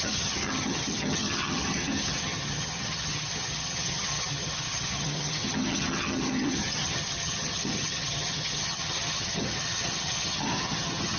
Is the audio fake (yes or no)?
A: yes